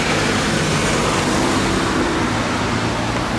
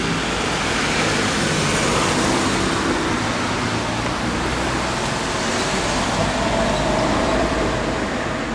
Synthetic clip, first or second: second